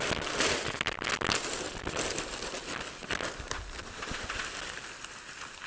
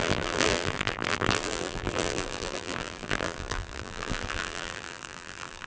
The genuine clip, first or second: first